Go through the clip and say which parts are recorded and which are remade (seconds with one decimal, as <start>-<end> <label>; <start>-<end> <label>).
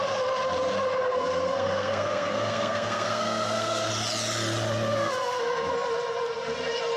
0.0-1.0 recorded; 1.0-3.9 remade; 3.9-4.9 recorded; 4.9-5.7 remade; 5.7-7.0 recorded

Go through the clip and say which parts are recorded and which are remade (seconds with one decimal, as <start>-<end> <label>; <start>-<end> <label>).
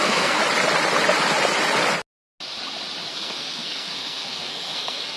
0.0-0.4 remade; 0.4-3.1 recorded; 3.1-5.2 remade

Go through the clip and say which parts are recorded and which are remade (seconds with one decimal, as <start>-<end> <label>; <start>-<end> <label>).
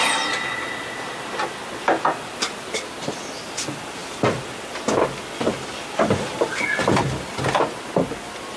0.0-8.6 recorded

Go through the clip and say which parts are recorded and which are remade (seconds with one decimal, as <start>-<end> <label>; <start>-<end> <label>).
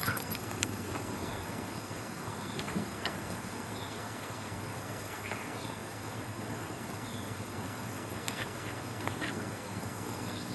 0.0-10.5 remade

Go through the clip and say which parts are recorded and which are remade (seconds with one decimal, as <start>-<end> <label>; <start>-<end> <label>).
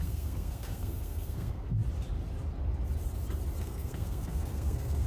0.0-1.8 remade; 1.8-3.6 recorded; 3.6-5.1 remade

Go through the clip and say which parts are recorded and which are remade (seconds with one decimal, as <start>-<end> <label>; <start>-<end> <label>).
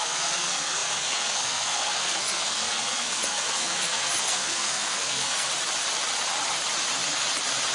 0.0-5.5 remade; 5.5-7.7 recorded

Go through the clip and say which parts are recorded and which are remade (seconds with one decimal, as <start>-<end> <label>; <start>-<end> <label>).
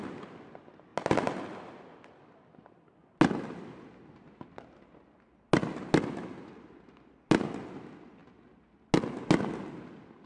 0.0-10.3 recorded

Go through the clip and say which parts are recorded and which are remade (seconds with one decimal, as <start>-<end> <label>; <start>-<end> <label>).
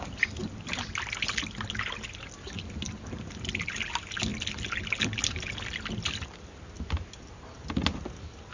0.0-8.5 recorded